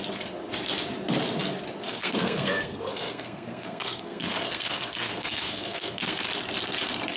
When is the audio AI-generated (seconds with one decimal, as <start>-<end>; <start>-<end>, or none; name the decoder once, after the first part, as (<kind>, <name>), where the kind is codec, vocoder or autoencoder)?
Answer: 1.9-6.2 (codec, SNAC)